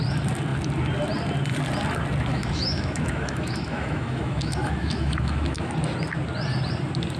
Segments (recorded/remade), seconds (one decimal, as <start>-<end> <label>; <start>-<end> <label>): 0.0-2.3 recorded; 2.3-5.7 remade; 5.7-7.2 recorded